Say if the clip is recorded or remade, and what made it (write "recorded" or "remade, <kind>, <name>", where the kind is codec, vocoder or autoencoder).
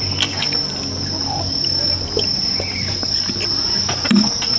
recorded